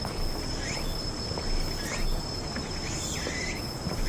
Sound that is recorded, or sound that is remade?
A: recorded